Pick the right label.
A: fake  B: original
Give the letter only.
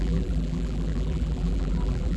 A